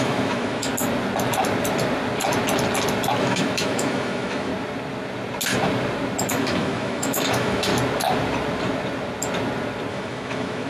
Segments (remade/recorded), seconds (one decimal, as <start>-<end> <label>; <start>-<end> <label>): 0.0-0.7 remade; 0.7-3.2 recorded; 3.2-4.5 remade; 4.5-6.3 recorded; 6.3-7.7 remade; 7.7-9.9 recorded; 9.9-10.7 remade